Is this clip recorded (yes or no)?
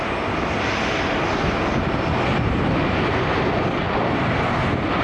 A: yes